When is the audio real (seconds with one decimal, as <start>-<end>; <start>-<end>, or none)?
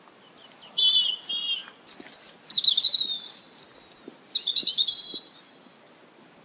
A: 0.0-6.4